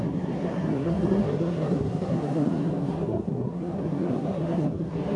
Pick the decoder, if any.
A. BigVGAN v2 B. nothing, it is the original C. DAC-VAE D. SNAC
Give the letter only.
D